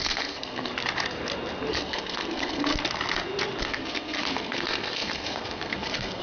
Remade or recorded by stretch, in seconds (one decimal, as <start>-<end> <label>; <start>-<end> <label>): 0.0-0.7 remade; 0.7-1.7 recorded; 1.7-2.7 remade; 2.7-3.6 recorded; 3.6-6.2 remade